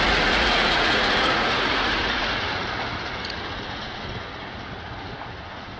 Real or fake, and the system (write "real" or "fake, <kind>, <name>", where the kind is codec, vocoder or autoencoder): fake, vocoder, Vocos